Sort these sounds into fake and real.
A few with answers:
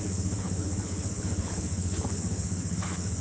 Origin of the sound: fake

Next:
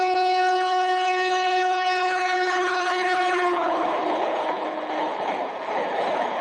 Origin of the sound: fake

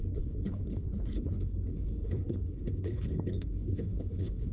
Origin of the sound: fake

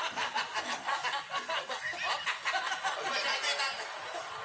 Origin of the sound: real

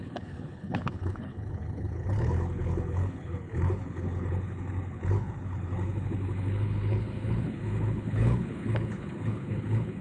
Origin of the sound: fake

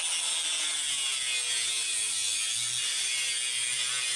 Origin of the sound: real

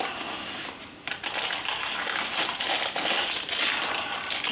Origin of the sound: real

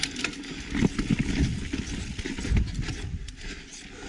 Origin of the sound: real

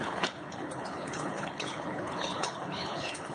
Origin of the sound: fake